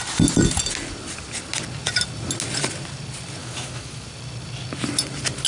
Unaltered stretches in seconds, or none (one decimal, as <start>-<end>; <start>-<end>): 0.0-3.4; 4.1-5.5